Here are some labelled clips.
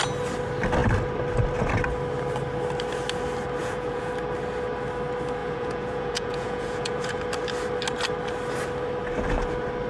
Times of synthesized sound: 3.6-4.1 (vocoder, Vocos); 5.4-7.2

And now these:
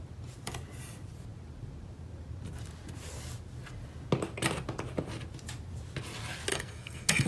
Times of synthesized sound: 6.5-7.3 (codec, SNAC)

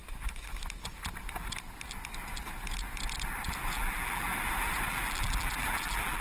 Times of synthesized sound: 3.7-4.3 (vocoder, BigVGAN v2); 4.9-6.2

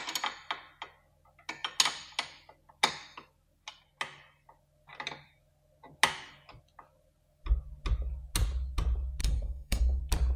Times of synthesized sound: 9.2-10.0 (codec, SNAC)

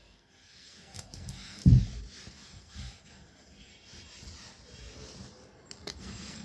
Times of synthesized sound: 0.0-1.6 (codec, SNAC); 2.3-3.7; 6.0-6.4

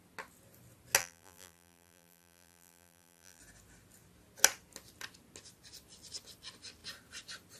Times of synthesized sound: 1.0-3.4 (vocoder, BigVGAN v2)